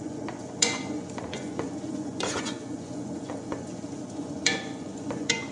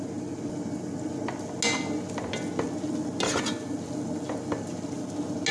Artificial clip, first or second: first